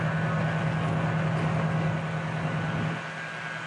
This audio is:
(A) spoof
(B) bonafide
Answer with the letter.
B